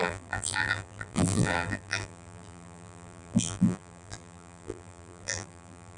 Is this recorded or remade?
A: remade